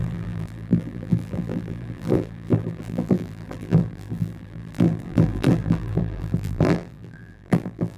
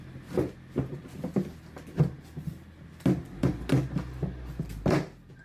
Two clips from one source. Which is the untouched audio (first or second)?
second